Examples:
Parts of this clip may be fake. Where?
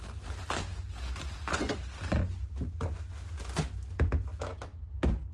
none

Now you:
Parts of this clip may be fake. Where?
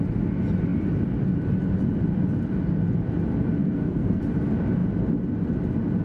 3.6-4.2 (codec, SNAC)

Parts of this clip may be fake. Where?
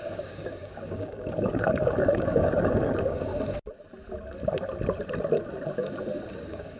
0.0-3.3 (codec, DAC); 6.3-6.8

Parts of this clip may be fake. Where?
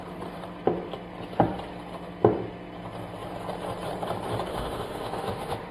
4.5-5.7 (autoencoder, DAC-VAE)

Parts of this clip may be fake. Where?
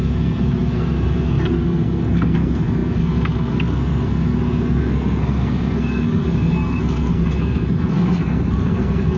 0.0-9.2 (codec, SNAC)